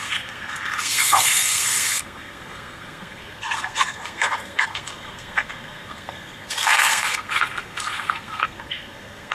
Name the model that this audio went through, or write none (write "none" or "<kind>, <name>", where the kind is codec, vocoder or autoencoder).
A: codec, SNAC